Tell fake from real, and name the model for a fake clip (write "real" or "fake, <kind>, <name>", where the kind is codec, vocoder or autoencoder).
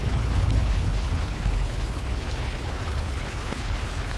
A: fake, codec, HILCodec